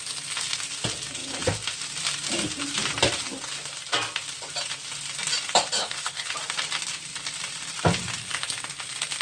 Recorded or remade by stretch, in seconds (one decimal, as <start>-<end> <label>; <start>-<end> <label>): 0.0-5.8 recorded; 5.8-6.3 remade; 6.3-9.2 recorded

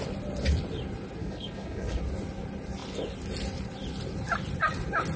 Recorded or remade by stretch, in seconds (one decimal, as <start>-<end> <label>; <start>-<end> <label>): 0.0-1.2 recorded; 1.2-2.0 remade; 2.0-5.2 recorded

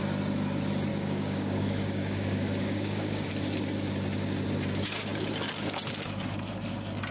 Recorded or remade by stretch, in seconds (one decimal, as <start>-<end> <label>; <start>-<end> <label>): 0.0-0.9 recorded; 0.9-3.3 remade; 3.3-7.1 recorded

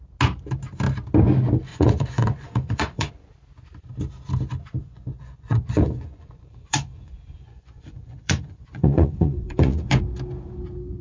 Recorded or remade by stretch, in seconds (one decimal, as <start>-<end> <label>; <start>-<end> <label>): 0.0-1.7 recorded; 1.7-3.1 remade; 3.1-4.8 recorded; 4.8-10.0 remade; 10.0-11.0 recorded

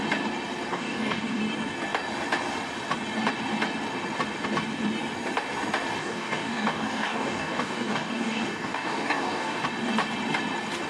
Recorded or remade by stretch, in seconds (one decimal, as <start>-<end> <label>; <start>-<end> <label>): 0.0-0.7 recorded; 0.7-1.4 remade; 1.4-6.0 recorded; 6.0-9.6 remade; 9.6-10.9 recorded